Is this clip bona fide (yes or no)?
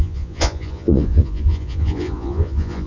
no